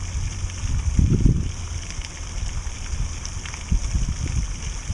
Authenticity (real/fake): real